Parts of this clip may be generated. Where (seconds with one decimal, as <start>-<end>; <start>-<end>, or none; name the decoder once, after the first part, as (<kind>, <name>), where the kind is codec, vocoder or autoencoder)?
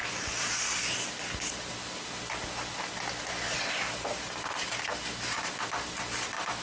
none